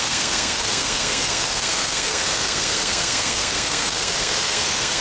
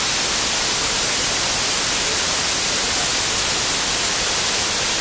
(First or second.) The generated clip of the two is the first